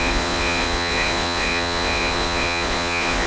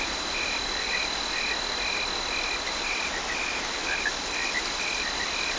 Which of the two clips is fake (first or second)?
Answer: first